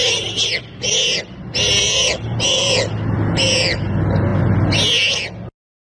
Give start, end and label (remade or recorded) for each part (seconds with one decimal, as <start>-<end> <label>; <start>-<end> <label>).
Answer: 0.0-5.9 recorded